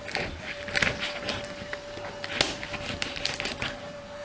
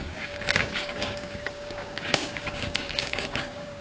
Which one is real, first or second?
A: first